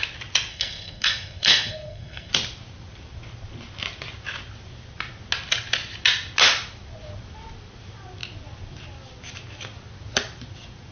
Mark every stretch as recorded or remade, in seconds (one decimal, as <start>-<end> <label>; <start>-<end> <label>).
0.0-0.5 recorded; 0.5-2.3 remade; 2.3-10.9 recorded